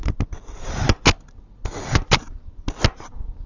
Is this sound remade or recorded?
recorded